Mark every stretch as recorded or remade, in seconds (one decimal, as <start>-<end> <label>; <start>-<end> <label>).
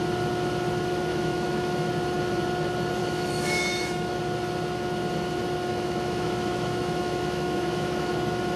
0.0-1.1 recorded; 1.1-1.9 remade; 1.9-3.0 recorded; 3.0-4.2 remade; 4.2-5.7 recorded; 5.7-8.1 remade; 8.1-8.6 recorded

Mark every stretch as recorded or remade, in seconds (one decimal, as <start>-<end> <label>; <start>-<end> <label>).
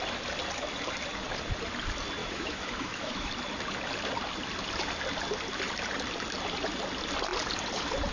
0.0-2.2 recorded; 2.2-3.3 remade; 3.3-8.1 recorded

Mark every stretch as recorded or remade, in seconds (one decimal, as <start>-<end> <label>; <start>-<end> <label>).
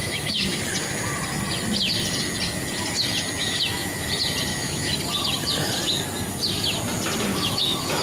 0.0-0.6 remade; 0.6-3.4 recorded; 3.4-4.1 remade; 4.1-4.5 recorded; 4.5-5.0 remade; 5.0-7.3 recorded; 7.3-8.0 remade